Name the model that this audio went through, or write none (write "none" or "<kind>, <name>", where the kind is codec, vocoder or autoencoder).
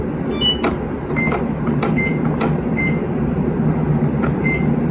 none